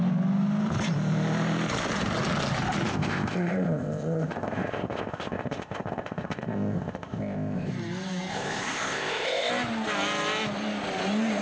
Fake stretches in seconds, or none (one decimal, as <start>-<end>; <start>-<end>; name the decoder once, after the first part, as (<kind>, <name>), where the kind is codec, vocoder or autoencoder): 2.9-7.7 (codec, ZipCodec); 8.3-9.5